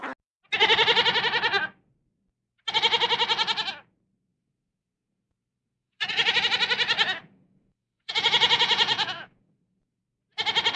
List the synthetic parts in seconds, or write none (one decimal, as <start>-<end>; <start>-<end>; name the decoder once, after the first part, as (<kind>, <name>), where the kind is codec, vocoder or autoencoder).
4.3-6.4 (vocoder, Vocos); 7.2-10.0